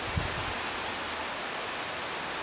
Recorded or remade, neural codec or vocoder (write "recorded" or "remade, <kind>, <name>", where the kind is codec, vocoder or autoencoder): recorded